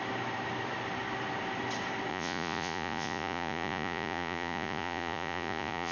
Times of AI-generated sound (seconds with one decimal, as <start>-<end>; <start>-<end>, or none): 2.1-5.9